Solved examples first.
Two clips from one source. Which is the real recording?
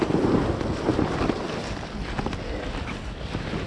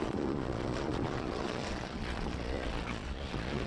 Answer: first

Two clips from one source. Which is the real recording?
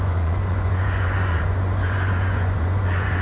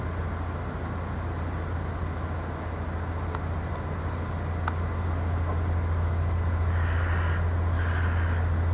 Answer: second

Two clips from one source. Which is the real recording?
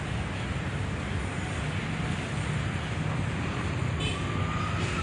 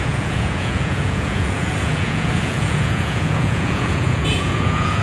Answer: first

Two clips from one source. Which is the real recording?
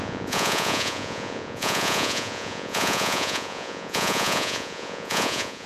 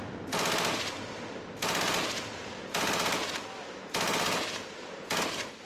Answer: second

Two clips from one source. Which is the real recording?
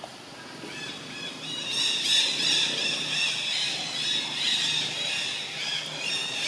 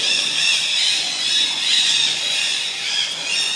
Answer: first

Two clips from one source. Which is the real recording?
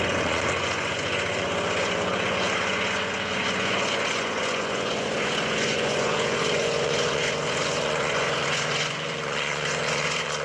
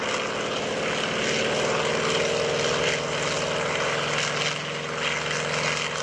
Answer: second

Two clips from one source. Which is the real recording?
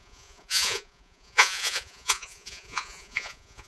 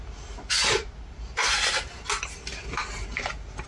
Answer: second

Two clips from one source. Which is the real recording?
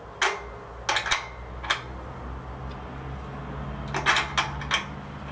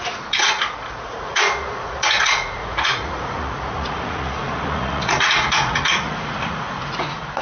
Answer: first